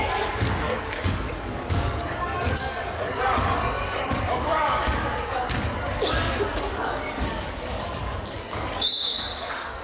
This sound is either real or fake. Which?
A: fake